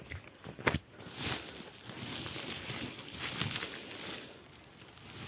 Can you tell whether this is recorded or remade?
recorded